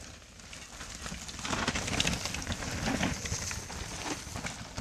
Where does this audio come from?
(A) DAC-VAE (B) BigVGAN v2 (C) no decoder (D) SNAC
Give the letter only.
C